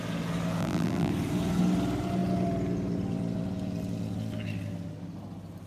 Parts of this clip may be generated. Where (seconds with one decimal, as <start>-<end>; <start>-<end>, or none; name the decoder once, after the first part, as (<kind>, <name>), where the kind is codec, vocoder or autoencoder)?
0.6-1.1 (vocoder, BigVGAN v2)